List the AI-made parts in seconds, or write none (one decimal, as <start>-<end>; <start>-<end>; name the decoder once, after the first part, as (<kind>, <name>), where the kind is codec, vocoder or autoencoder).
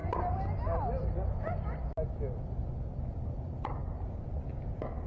none